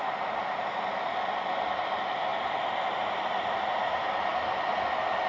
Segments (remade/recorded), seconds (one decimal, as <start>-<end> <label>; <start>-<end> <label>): 0.0-5.3 recorded